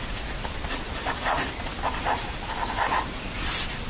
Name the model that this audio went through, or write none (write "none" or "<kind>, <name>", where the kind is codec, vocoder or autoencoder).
none